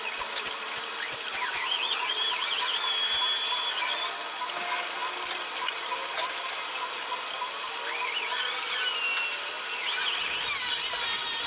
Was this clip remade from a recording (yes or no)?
no